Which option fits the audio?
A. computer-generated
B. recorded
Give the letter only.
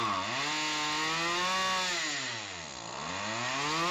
B